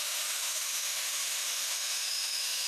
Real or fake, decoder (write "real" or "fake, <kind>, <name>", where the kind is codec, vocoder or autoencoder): fake, autoencoder, DAC-VAE